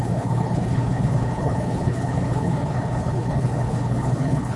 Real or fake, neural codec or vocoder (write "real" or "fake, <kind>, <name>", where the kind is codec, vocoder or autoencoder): fake, codec, HILCodec